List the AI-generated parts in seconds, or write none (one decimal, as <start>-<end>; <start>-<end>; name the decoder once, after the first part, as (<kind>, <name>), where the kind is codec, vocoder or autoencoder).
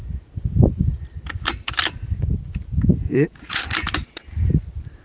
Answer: 2.9-3.6 (vocoder, Vocos)